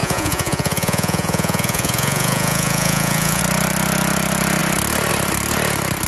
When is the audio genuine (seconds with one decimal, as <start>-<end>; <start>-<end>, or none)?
3.4-6.1